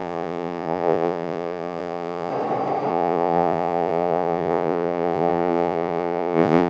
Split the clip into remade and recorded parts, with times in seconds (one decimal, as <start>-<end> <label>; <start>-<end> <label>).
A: 0.0-2.3 remade; 2.3-2.9 recorded; 2.9-6.7 remade